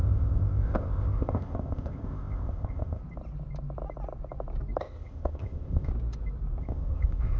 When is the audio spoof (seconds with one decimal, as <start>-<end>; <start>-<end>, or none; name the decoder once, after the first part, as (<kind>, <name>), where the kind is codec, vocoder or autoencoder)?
0.0-3.0 (codec, ZipCodec); 4.8-5.9; 6.6-7.4